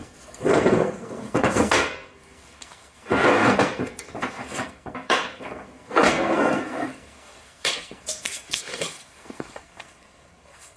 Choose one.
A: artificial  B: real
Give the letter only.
A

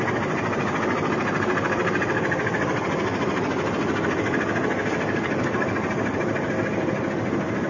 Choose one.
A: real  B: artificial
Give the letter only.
A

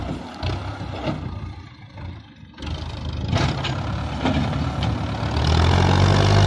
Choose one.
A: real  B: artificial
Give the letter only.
A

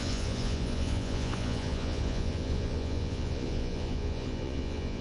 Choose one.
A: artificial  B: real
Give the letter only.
A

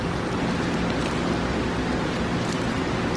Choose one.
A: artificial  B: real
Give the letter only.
B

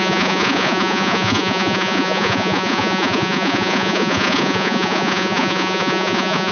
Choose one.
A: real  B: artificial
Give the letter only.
B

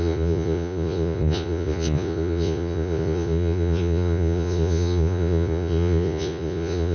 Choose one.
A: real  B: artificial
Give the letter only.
B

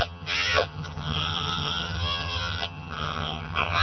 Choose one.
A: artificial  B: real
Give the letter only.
A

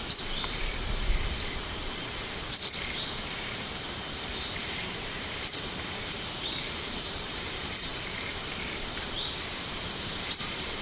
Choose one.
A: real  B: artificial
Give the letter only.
B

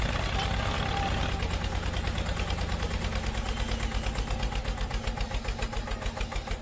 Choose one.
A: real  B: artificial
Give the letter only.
A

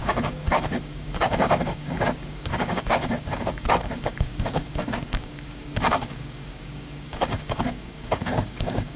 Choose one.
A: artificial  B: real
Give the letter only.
A